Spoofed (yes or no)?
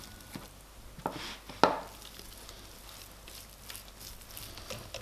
no